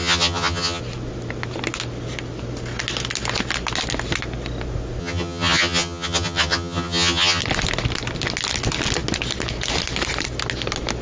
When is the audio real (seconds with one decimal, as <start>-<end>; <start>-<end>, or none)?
0.8-5.0; 7.4-11.0